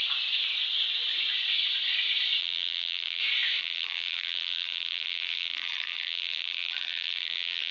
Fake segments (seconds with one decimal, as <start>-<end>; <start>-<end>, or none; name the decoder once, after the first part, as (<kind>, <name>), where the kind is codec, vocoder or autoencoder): 2.4-3.2 (vocoder, BigVGAN v2); 3.6-7.7